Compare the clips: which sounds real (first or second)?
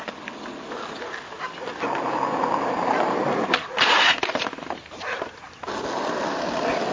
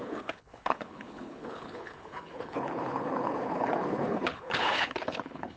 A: first